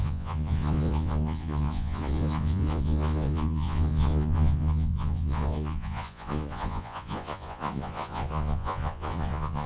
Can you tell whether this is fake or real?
fake